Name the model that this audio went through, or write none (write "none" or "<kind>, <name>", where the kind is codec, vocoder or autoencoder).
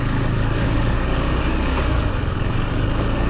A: codec, DAC